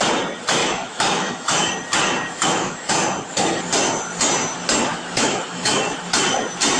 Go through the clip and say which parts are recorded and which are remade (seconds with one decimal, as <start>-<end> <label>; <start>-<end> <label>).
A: 0.0-0.6 recorded; 0.6-1.7 remade; 1.7-2.3 recorded; 2.3-2.9 remade; 2.9-4.9 recorded; 4.9-5.8 remade; 5.8-6.8 recorded

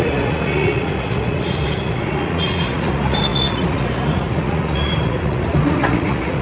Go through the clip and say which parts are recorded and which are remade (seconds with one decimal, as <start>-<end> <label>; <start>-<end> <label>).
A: 0.0-6.4 remade

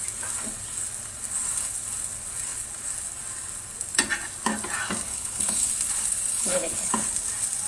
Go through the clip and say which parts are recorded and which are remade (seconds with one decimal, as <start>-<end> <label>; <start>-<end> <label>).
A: 0.0-5.1 recorded; 5.1-5.7 remade; 5.7-6.3 recorded; 6.3-6.9 remade; 6.9-7.7 recorded